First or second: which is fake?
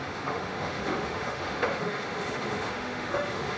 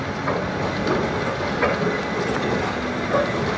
first